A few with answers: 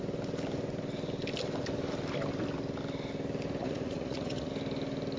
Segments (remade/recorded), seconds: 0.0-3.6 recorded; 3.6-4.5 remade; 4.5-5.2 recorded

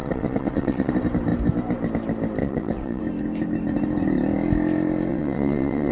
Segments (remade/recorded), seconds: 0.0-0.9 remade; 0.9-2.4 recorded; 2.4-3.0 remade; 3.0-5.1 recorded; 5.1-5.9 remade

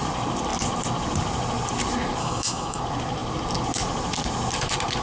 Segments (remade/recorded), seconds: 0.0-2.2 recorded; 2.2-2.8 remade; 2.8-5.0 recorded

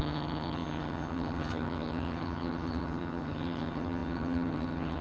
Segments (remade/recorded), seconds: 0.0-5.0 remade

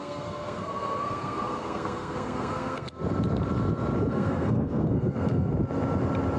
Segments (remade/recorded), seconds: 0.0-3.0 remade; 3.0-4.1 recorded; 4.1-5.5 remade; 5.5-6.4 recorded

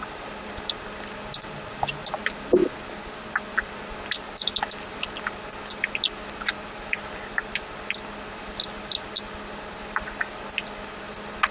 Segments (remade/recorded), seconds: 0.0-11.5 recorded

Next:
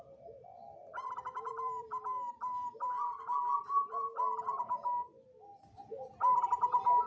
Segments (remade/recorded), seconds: 0.0-0.9 recorded; 0.9-5.2 remade; 5.2-7.1 recorded

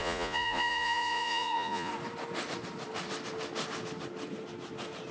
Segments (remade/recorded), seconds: 0.0-1.9 remade; 1.9-5.1 recorded